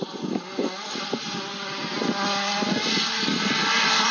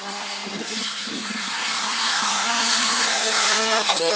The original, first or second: first